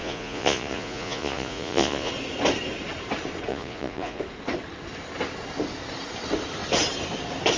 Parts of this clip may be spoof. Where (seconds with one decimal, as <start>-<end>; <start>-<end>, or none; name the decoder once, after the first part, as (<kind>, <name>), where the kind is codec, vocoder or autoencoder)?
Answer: 0.0-2.1 (vocoder, Vocos); 3.5-4.2